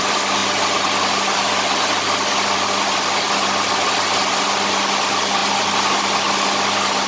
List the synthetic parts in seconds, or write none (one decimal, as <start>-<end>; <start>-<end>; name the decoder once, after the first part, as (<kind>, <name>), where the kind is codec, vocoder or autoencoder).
none